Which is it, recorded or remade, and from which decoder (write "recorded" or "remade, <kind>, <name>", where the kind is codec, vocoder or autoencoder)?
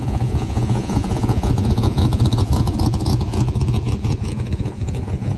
remade, vocoder, Vocos